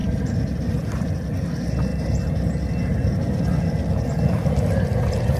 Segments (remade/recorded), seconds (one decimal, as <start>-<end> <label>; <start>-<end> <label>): 0.0-0.6 remade; 0.6-1.9 recorded; 1.9-2.7 remade; 2.7-5.4 recorded